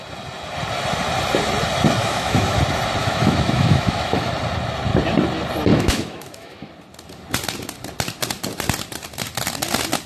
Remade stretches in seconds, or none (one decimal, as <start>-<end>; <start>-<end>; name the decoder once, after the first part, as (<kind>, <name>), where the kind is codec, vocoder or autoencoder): 2.0-2.6 (autoencoder, DAC-VAE); 3.0-4.3; 5.7-6.7

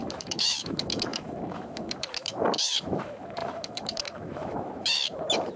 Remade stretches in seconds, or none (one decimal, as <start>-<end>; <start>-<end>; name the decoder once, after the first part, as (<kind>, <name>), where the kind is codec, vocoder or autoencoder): 0.0-5.6 (autoencoder, DAC-VAE)

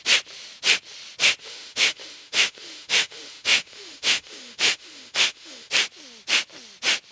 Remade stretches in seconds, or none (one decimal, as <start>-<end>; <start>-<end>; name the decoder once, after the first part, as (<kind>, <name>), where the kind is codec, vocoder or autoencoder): 1.4-5.7 (autoencoder, DAC-VAE)

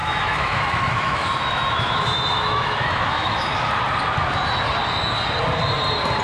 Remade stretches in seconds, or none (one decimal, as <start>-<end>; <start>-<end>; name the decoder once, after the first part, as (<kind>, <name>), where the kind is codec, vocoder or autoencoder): 0.0-3.7 (autoencoder, DAC-VAE)

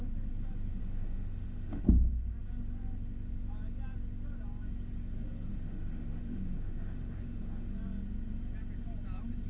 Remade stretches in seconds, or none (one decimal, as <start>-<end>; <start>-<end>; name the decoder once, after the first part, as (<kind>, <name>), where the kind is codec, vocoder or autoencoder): 0.8-1.8 (autoencoder, DAC-VAE); 5.5-7.7

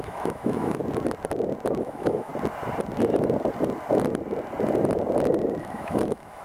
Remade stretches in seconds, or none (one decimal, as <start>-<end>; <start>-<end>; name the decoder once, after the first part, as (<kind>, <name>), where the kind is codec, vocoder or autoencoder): 0.0-0.8 (autoencoder, DAC-VAE); 1.8-2.3; 5.6-6.4

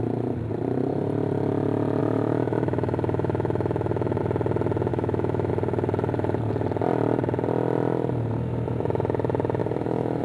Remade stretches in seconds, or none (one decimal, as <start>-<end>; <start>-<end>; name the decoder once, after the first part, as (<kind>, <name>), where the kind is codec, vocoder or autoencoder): 2.0-4.2 (autoencoder, DAC-VAE); 4.9-5.5; 9.6-10.2